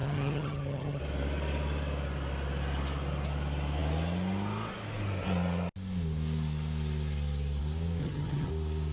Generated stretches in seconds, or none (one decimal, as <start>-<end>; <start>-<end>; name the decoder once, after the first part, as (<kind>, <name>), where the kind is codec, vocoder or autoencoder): 0.0-1.0 (vocoder, HiFi-GAN); 8.0-8.5